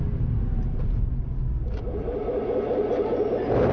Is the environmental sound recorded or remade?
remade